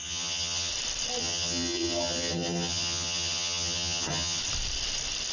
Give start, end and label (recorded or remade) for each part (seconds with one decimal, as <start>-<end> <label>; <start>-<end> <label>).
0.0-0.7 remade; 0.7-1.2 recorded; 1.2-4.4 remade; 4.4-5.3 recorded